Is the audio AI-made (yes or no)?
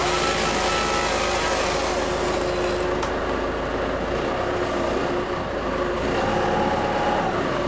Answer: no